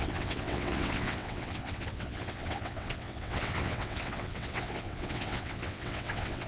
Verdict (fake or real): fake